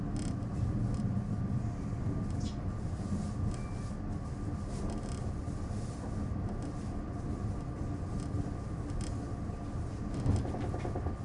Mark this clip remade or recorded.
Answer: recorded